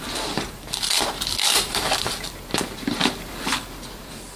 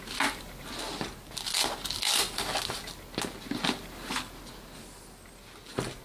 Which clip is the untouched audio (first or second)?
second